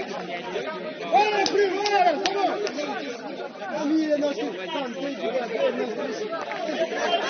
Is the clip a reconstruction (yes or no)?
no